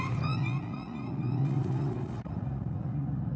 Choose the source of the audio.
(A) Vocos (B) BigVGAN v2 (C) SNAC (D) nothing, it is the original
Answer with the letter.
A